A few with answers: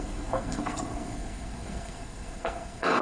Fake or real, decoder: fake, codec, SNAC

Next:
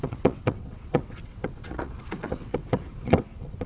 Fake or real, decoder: fake, vocoder, WaveNeXt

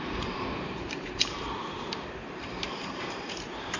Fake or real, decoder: fake, vocoder, BigVGAN v2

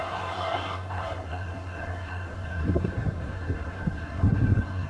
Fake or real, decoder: fake, codec, SNAC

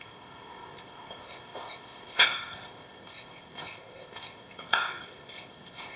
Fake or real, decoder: fake, codec, ZipCodec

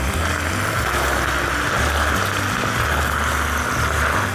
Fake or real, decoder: real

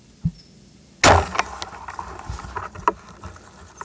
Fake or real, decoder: real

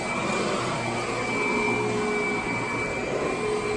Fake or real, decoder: real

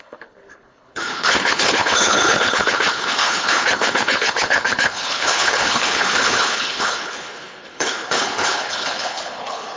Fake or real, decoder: fake, codec, HILCodec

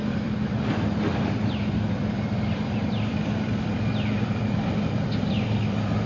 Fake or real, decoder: fake, vocoder, BigVGAN v2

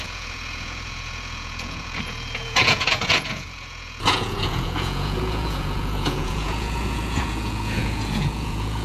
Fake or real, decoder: fake, vocoder, Vocos